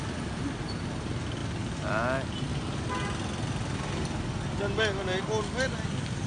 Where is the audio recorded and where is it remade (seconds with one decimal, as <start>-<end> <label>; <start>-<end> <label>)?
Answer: 0.0-6.3 recorded